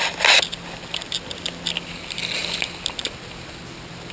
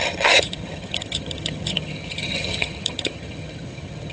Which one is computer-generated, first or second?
second